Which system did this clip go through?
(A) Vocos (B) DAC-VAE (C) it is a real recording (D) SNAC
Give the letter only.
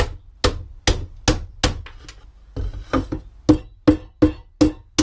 C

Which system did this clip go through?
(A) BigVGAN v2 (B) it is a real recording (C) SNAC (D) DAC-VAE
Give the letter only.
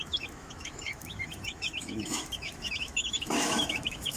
D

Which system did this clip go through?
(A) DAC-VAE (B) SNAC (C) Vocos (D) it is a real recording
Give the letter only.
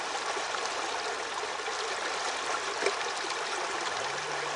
D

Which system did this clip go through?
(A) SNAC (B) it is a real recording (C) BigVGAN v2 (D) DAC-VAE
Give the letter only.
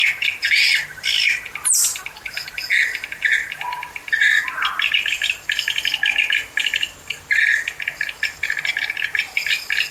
B